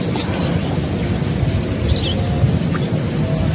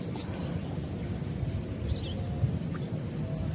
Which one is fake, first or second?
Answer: second